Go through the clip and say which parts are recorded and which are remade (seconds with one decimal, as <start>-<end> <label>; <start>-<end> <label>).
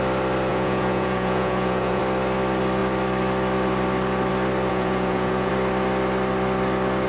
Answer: 0.0-0.5 recorded; 0.5-2.0 remade; 2.0-4.7 recorded; 4.7-5.5 remade; 5.5-7.1 recorded